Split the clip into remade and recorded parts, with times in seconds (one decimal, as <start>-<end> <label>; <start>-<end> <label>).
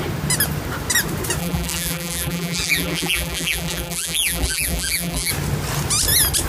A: 0.0-1.4 recorded; 1.4-5.3 remade; 5.3-6.5 recorded